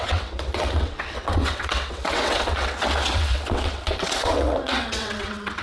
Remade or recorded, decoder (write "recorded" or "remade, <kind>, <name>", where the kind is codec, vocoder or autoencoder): remade, vocoder, WaveNeXt